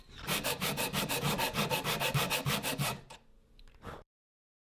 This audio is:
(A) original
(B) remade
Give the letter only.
B